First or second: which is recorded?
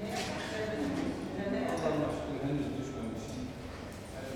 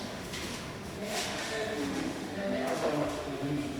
first